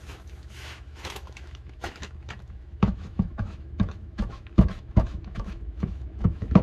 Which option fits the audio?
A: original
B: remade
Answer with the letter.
B